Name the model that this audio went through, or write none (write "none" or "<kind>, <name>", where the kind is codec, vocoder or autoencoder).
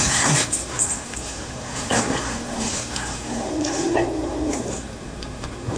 codec, SNAC